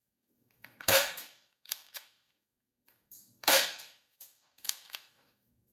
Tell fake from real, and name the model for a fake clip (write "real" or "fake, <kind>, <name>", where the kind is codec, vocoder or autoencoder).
fake, codec, DAC